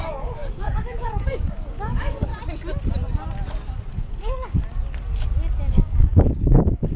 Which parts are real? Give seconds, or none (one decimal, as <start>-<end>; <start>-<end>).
2.3-3.9; 4.6-5.7

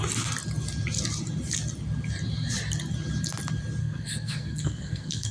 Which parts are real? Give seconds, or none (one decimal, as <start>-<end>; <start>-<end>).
0.0-3.8

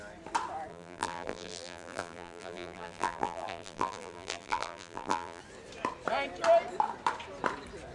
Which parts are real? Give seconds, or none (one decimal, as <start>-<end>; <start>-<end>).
0.0-0.7; 5.4-7.9

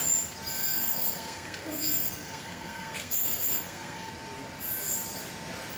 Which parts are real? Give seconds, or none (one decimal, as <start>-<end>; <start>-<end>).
0.0-0.6; 4.1-5.8

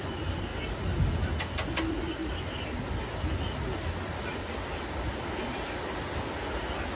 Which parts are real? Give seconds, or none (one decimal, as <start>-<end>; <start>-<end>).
0.0-6.9

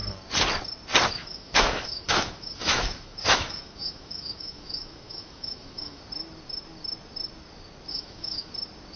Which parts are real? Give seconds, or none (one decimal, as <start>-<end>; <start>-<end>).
0.0-1.2; 6.0-7.9; 8.5-9.0

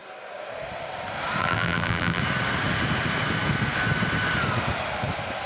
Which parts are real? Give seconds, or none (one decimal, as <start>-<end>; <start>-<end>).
0.0-1.4; 2.2-5.5

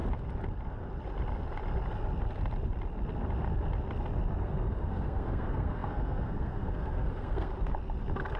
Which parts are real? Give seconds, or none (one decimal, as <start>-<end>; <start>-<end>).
0.0-4.4; 7.5-8.4